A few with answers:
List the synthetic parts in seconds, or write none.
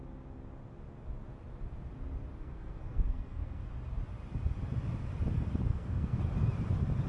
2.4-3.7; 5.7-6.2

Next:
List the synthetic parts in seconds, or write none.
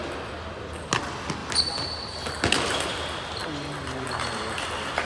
none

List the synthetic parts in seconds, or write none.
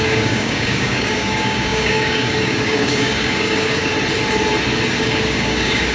0.0-3.9; 4.9-5.9